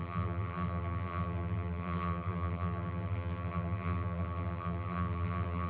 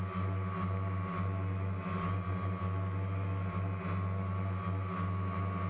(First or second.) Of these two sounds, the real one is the second